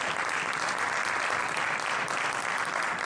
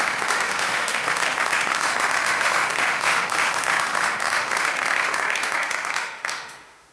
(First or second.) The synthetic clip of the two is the second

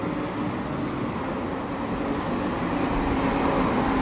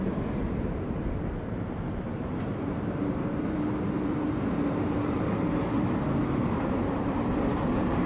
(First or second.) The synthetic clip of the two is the second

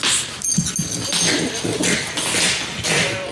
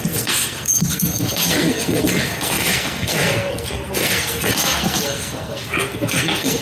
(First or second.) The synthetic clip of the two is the second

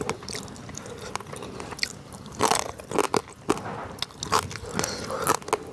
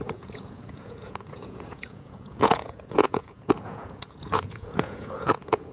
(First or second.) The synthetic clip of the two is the second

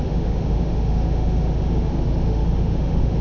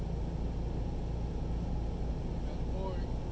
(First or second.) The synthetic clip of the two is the first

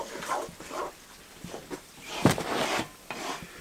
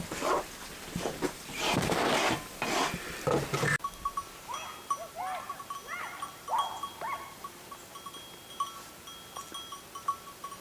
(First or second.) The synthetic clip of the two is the first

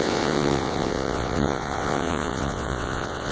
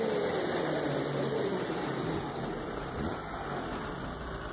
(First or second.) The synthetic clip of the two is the first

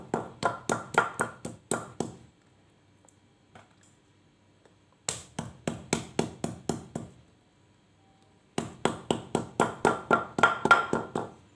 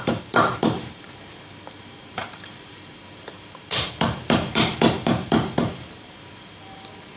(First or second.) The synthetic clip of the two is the second